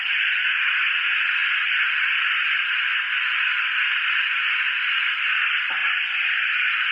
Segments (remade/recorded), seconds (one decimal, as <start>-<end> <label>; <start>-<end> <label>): 0.0-1.4 remade; 1.4-4.1 recorded; 4.1-6.9 remade